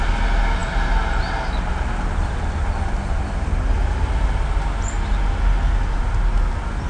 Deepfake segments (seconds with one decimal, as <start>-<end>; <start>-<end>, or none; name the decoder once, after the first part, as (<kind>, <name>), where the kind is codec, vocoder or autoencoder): none